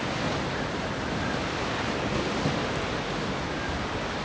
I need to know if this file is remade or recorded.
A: recorded